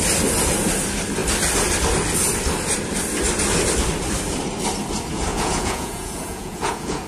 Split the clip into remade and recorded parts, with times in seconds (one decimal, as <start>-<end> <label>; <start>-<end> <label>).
0.0-5.3 recorded; 5.3-7.1 remade